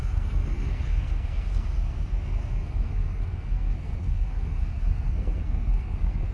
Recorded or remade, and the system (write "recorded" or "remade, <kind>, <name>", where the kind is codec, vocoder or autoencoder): remade, codec, SNAC